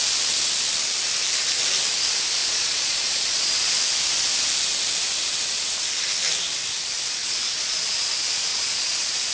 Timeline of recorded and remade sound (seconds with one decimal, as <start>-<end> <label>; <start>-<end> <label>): 0.0-2.4 recorded; 2.4-3.5 remade; 3.5-7.2 recorded; 7.2-8.1 remade; 8.1-8.5 recorded; 8.5-9.3 remade